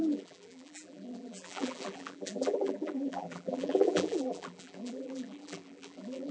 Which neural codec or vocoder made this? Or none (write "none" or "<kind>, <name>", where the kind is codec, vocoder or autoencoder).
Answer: vocoder, BigVGAN v2